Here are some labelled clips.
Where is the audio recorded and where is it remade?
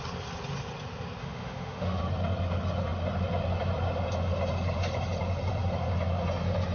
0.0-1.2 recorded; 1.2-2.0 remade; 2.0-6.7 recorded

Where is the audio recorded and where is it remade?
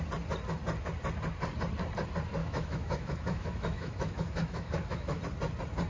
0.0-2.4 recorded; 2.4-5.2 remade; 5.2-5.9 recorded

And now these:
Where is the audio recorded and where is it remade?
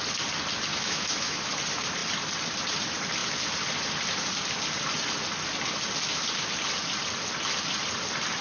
0.0-0.7 recorded; 0.7-1.5 remade; 1.5-8.4 recorded